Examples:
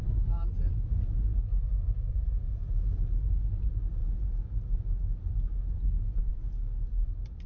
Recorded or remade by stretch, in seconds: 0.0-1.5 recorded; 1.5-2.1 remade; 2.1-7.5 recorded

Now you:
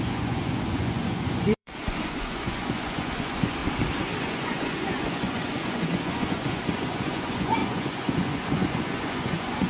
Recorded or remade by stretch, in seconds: 0.0-3.6 remade; 3.6-4.2 recorded; 4.2-9.7 remade

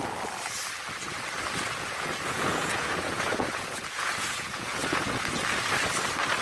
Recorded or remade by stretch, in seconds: 0.0-1.7 recorded; 1.7-5.4 remade; 5.4-6.4 recorded

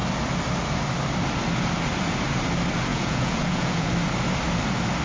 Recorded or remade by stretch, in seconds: 0.0-2.9 recorded; 2.9-3.9 remade; 3.9-5.0 recorded

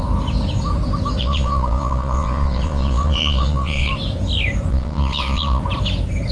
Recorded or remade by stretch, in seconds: 0.0-1.2 recorded; 1.2-3.9 remade; 3.9-4.7 recorded; 4.7-5.6 remade; 5.6-6.3 recorded

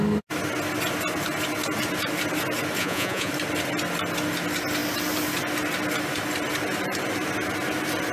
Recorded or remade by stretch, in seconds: 0.0-2.8 recorded; 2.8-3.3 remade; 3.3-8.1 recorded